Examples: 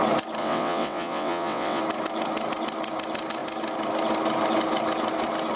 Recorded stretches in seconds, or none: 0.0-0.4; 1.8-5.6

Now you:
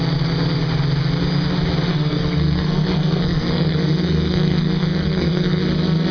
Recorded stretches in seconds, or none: 0.0-1.9; 5.6-6.1